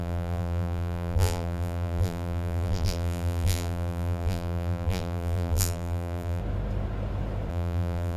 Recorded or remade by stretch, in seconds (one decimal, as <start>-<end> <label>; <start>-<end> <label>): 0.0-6.4 remade; 6.4-7.5 recorded; 7.5-8.2 remade